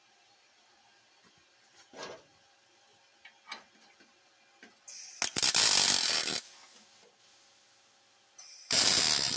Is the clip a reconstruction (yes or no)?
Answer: no